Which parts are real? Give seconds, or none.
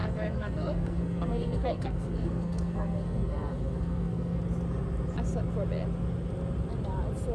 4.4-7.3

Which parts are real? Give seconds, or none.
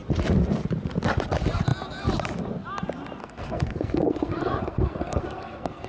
0.0-3.2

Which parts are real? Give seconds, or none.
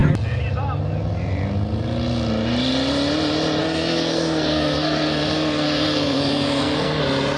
0.0-3.6; 7.0-7.4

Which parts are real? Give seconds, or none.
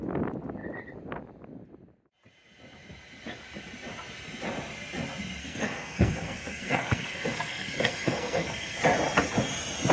0.0-5.4; 8.8-9.9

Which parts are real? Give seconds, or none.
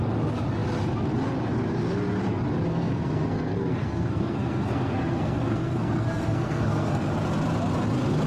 0.0-2.7; 7.0-8.3